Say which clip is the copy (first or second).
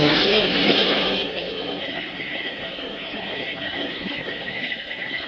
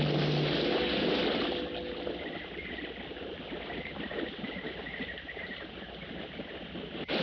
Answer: first